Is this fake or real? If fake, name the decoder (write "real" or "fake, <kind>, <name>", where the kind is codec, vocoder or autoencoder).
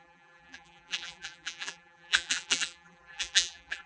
fake, vocoder, BigVGAN v2